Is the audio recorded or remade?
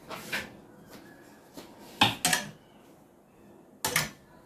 recorded